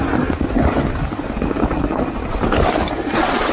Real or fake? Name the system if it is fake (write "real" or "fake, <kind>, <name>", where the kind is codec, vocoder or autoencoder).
real